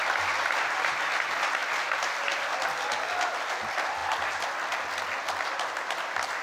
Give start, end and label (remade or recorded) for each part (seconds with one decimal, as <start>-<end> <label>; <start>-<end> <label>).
0.0-6.4 recorded